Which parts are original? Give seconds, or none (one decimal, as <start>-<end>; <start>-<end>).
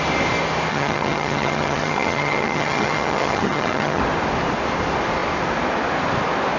0.0-0.7; 4.0-6.6